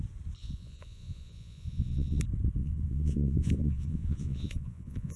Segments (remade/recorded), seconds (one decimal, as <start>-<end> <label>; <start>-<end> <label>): 0.0-0.4 recorded; 0.4-2.2 remade; 2.2-2.6 recorded; 2.6-5.2 remade